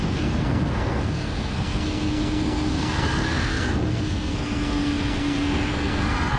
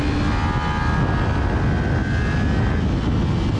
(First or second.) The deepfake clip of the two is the first